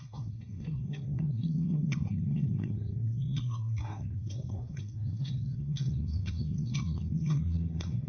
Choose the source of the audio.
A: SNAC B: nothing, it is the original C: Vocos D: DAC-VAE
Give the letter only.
A